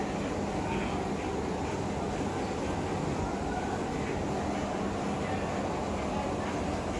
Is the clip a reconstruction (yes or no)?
no